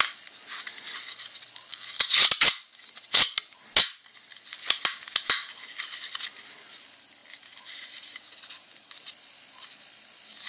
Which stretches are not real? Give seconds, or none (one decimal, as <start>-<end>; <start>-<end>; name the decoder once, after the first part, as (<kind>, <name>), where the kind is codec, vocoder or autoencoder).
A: none